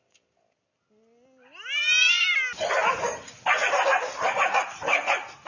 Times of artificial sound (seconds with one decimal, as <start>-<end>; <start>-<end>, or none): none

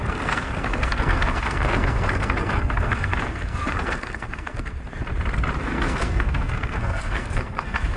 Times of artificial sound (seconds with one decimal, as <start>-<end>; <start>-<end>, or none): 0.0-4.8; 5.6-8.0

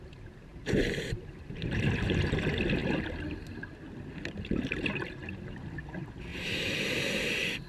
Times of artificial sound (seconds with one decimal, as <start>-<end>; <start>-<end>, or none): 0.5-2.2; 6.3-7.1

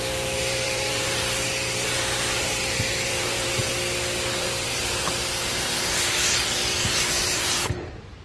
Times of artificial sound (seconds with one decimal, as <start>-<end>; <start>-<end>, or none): 0.0-3.7; 7.2-8.2

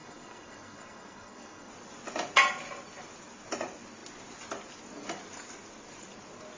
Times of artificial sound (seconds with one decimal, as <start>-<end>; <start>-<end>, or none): 0.0-1.7